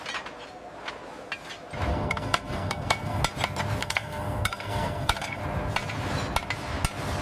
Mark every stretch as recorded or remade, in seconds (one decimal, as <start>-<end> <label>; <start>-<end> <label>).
0.0-1.9 recorded; 1.9-3.2 remade; 3.2-3.8 recorded; 3.8-5.4 remade; 5.4-7.2 recorded